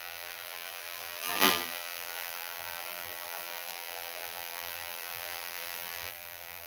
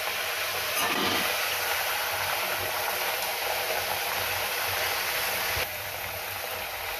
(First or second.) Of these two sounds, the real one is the second